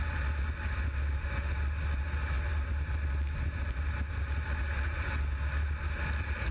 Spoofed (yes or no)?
no